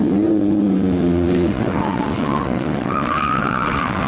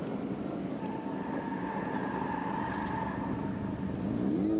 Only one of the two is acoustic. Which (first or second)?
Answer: second